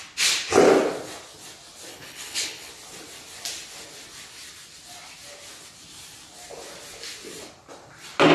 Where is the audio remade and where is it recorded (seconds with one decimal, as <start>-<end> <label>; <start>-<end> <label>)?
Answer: 0.0-1.9 recorded; 1.9-2.7 remade; 2.7-8.3 recorded